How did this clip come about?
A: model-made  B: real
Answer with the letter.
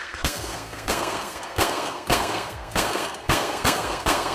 A